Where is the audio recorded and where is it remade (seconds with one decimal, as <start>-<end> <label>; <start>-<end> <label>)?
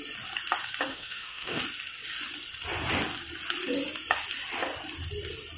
0.0-0.9 recorded; 0.9-1.6 remade; 1.6-5.6 recorded